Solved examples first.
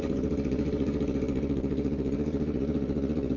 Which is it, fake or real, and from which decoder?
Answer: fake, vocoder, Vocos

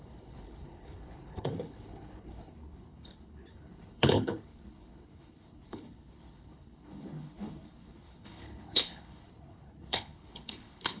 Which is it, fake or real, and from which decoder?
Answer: fake, codec, HILCodec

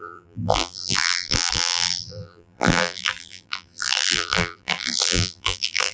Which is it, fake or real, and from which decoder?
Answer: fake, vocoder, BigVGAN v2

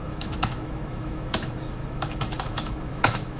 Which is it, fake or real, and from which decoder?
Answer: fake, autoencoder, DAC-VAE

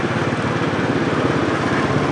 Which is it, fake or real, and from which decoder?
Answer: real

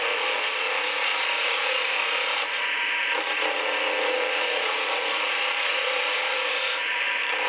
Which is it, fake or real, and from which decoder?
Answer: fake, vocoder, Vocos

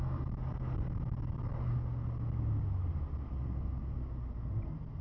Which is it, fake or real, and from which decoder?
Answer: real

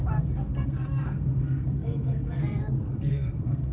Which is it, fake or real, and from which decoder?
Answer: fake, codec, SNAC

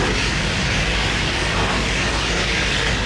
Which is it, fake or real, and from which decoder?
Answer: fake, codec, DAC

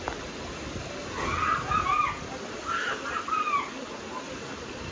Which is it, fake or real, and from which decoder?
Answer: real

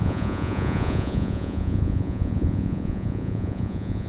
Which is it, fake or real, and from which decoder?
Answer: fake, vocoder, Vocos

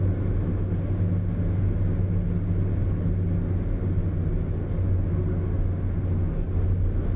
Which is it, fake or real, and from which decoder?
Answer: real